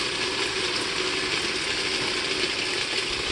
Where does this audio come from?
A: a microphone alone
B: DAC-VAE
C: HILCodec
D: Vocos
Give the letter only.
A